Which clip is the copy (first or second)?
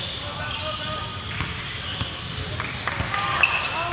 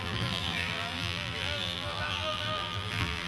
second